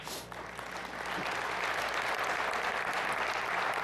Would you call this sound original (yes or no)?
yes